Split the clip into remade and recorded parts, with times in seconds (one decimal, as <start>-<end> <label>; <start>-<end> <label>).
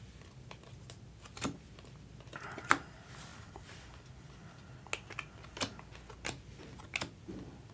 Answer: 0.0-3.3 recorded; 3.3-4.7 remade; 4.7-7.7 recorded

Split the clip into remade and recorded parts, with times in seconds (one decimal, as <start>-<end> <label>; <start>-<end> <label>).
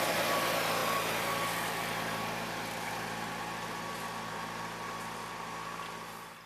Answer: 0.0-6.5 recorded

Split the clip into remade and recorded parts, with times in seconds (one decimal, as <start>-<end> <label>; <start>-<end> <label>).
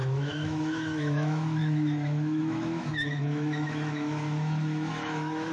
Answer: 0.0-5.5 remade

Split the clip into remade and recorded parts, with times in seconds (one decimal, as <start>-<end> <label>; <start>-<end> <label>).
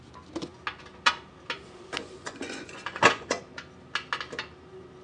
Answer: 0.0-2.0 recorded; 2.0-3.4 remade; 3.4-5.0 recorded